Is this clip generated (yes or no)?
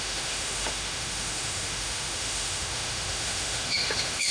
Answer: yes